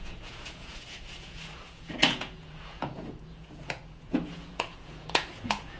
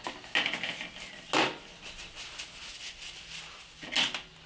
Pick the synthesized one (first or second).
first